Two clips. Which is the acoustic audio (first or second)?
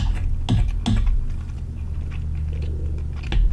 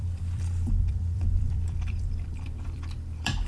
first